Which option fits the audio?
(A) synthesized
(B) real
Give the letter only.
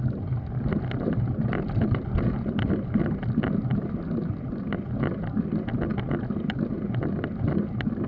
B